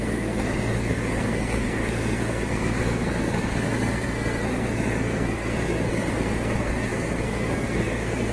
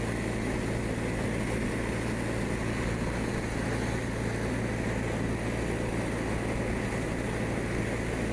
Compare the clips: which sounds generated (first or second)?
first